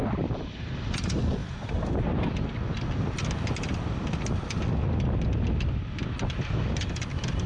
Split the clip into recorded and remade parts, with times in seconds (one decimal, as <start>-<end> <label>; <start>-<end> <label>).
0.0-7.5 recorded